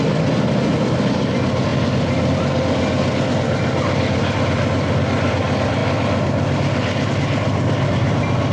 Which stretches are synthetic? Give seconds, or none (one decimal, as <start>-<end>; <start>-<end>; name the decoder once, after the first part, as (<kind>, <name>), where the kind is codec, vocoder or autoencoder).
1.7-2.4 (vocoder, BigVGAN v2)

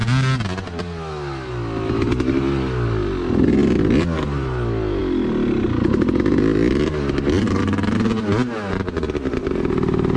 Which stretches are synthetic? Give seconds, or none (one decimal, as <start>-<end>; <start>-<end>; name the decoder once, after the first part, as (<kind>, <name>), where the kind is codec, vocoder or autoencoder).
5.0-8.2 (vocoder, BigVGAN v2)

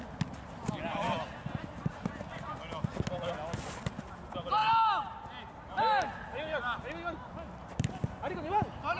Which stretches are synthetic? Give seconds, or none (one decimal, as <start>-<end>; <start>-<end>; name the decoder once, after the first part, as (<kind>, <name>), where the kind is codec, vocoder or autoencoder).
none

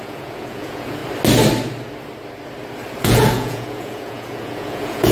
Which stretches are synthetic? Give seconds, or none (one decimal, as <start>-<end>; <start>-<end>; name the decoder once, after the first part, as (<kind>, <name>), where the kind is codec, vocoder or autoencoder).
0.0-1.0 (vocoder, Vocos); 3.0-5.1

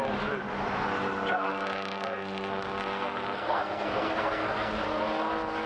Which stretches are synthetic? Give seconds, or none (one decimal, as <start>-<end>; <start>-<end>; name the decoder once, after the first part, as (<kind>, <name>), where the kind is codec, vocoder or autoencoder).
1.3-4.7 (codec, SNAC)

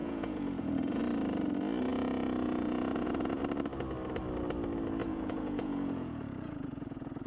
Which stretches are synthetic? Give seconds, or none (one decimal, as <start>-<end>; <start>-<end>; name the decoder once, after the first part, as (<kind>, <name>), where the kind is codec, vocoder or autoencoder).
0.0-1.0 (vocoder, Vocos); 1.9-3.4; 5.0-7.3

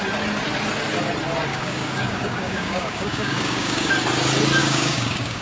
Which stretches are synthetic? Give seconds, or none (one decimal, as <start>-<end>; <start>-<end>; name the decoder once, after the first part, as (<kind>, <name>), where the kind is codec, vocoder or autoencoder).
1.5-3.9 (codec, DAC); 4.6-5.4

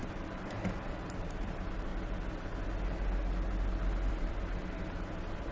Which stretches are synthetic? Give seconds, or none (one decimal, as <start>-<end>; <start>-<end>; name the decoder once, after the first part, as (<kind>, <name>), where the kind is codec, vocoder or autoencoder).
0.0-1.9 (vocoder, BigVGAN v2); 4.1-5.5